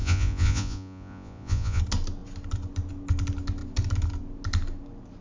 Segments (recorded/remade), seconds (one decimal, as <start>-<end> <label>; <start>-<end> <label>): 0.0-1.8 remade; 1.8-5.2 recorded